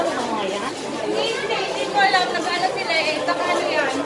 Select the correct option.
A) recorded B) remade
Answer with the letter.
A